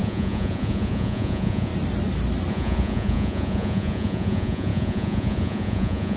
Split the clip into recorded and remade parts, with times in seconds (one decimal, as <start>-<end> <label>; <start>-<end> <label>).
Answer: 0.0-1.7 remade; 1.7-2.5 recorded; 2.5-6.2 remade